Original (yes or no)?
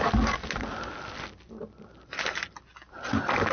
yes